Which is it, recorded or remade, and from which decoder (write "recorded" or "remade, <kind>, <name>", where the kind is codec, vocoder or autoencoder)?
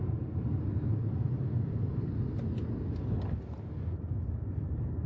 recorded